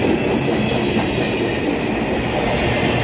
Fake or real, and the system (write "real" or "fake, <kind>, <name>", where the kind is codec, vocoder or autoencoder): real